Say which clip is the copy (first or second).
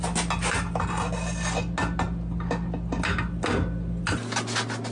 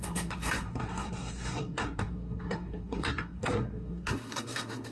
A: second